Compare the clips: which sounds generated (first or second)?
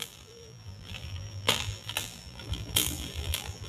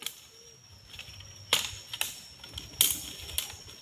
first